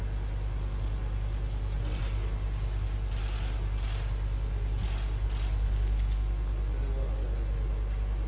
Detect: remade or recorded recorded